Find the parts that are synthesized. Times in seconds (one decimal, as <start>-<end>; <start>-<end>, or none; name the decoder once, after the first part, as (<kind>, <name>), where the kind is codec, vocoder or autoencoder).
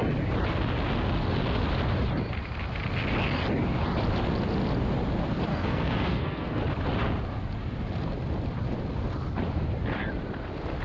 5.5-6.6 (codec, SNAC)